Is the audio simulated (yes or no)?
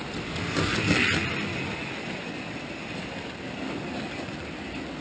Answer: no